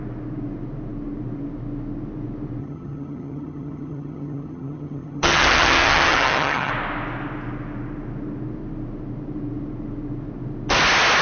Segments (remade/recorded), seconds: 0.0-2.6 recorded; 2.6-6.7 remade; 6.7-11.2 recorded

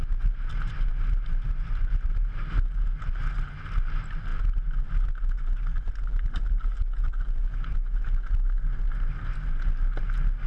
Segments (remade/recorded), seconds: 0.0-10.5 recorded

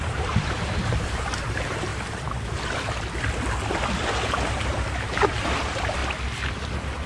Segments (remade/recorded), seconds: 0.0-1.9 remade; 1.9-4.0 recorded; 4.0-4.7 remade; 4.7-5.4 recorded; 5.4-6.0 remade; 6.0-7.1 recorded

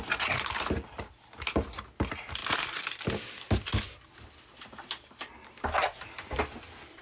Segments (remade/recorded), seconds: 0.0-7.0 recorded

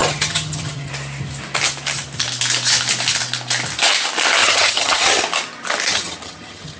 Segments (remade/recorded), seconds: 0.0-0.9 remade; 0.9-4.4 recorded; 4.4-5.2 remade; 5.2-5.9 recorded; 5.9-6.8 remade